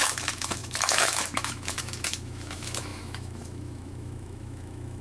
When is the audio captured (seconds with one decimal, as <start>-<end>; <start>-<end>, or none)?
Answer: none